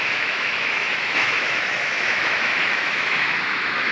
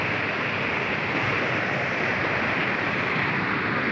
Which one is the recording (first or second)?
second